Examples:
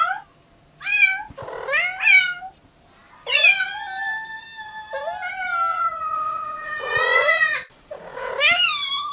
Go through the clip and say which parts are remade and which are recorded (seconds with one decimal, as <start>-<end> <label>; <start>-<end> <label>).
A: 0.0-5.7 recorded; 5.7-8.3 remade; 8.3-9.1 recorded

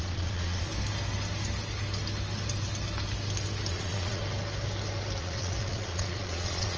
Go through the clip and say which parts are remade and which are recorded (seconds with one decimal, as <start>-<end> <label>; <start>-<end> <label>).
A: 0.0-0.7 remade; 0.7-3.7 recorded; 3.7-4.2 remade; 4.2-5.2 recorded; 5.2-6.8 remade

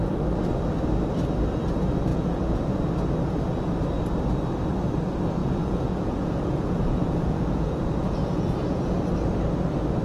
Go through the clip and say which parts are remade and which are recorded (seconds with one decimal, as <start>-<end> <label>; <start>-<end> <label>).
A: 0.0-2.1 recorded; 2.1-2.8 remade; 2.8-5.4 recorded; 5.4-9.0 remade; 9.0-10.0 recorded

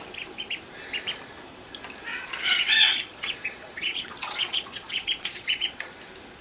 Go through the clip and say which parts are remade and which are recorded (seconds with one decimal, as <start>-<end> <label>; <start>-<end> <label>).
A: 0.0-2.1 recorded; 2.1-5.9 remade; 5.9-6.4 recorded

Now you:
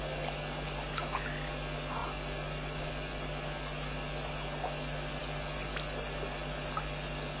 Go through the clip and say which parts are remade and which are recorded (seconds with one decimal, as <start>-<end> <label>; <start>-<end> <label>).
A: 0.0-7.4 recorded